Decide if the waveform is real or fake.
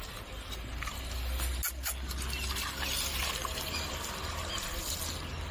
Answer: real